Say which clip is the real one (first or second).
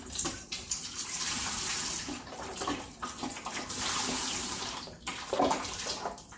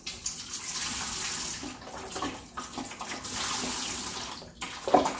second